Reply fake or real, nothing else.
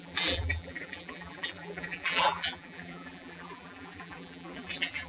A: fake